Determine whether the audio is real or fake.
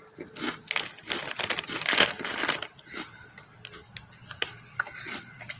real